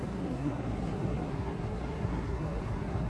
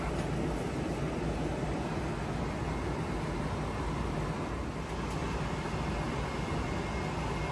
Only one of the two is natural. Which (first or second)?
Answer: second